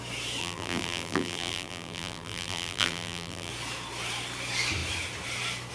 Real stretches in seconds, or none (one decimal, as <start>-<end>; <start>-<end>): 0.0-0.4; 3.5-5.7